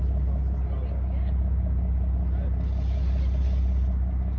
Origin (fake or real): real